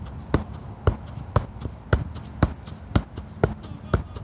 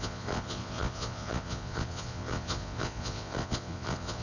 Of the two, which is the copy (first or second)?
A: second